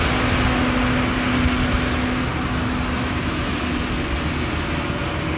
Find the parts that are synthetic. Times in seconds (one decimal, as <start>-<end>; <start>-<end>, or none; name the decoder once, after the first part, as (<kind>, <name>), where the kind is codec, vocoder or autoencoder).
none